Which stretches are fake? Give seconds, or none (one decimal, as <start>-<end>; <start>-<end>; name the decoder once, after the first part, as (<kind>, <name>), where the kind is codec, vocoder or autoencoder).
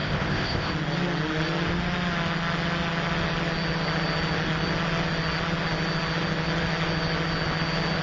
0.0-0.7 (codec, ZipCodec)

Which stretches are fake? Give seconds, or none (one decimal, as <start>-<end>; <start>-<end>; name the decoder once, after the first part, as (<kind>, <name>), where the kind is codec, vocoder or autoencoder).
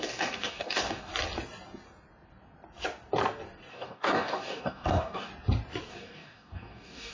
0.0-1.1 (codec, DAC); 3.7-5.3; 5.9-7.1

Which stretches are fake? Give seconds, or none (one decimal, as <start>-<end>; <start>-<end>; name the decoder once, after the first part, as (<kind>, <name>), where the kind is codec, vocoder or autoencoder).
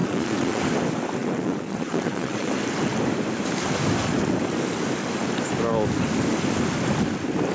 0.0-0.6 (vocoder, Vocos); 1.2-2.5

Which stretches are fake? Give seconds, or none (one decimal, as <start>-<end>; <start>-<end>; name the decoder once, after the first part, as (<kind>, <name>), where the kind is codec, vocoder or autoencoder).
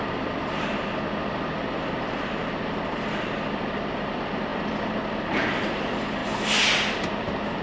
none